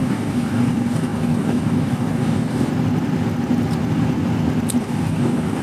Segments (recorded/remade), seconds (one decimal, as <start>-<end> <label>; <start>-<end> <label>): 0.0-2.7 remade; 2.7-4.8 recorded; 4.8-5.6 remade